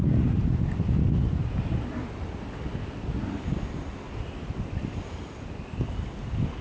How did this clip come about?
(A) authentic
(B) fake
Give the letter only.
A